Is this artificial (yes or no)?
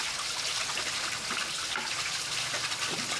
no